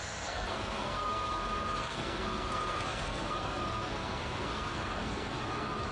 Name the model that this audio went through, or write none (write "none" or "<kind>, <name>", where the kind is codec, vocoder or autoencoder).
codec, SNAC